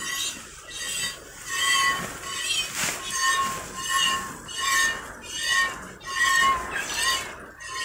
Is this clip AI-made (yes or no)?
no